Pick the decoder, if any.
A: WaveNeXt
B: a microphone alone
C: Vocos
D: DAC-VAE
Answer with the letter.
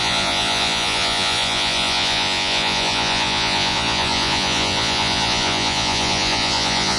C